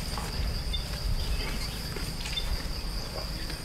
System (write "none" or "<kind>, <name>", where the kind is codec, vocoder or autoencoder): none